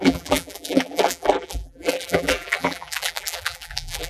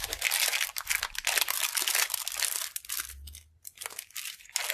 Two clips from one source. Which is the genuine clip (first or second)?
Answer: second